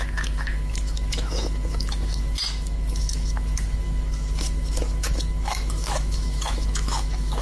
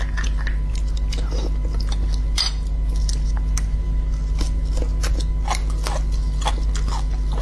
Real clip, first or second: second